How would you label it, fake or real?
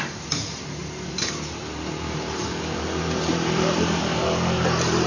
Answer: fake